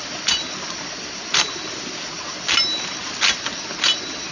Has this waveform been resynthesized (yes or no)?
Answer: no